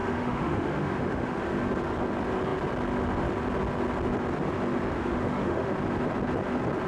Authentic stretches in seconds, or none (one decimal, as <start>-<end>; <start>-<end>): 1.4-5.0; 5.7-6.9